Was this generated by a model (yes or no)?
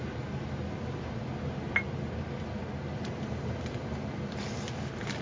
no